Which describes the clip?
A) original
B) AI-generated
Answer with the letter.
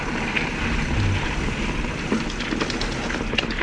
A